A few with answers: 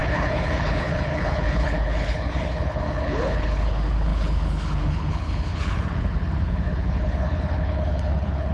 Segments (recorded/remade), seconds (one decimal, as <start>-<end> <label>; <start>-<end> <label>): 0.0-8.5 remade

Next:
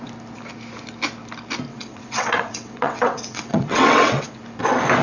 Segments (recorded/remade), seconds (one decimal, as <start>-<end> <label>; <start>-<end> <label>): 0.0-1.7 recorded; 1.7-4.4 remade; 4.4-5.0 recorded

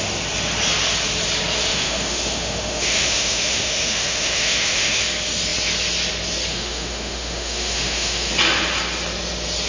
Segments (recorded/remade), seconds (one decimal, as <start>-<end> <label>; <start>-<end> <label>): 0.0-1.7 recorded; 1.7-5.0 remade; 5.0-6.5 recorded; 6.5-8.3 remade; 8.3-9.7 recorded

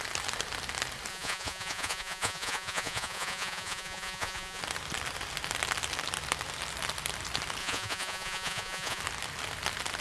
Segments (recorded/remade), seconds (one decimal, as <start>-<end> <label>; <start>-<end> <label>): 0.0-1.1 recorded; 1.1-4.6 remade; 4.6-7.6 recorded; 7.6-9.0 remade; 9.0-10.0 recorded

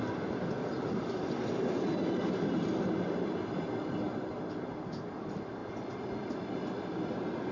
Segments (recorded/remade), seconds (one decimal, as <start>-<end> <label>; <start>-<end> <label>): 0.0-7.5 recorded

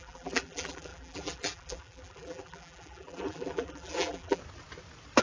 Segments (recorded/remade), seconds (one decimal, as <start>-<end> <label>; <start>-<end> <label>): 0.0-4.4 remade; 4.4-5.2 recorded